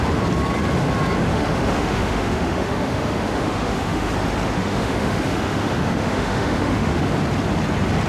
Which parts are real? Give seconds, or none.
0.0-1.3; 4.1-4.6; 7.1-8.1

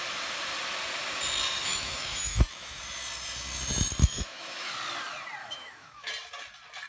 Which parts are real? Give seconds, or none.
0.0-1.6; 2.8-4.0; 4.7-5.4; 6.1-6.9

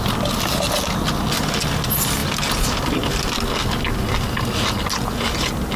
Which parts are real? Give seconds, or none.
0.0-5.8

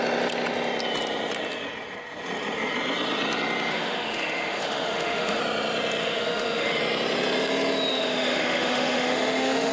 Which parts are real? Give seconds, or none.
0.0-3.7; 5.4-6.0; 6.8-7.9

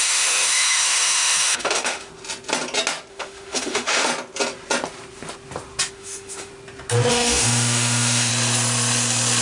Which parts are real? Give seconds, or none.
2.1-3.1; 4.1-5.9; 6.5-7.1; 8.3-9.4